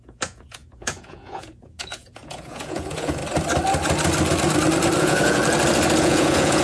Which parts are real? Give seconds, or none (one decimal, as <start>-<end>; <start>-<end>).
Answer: 3.2-5.0; 5.4-6.0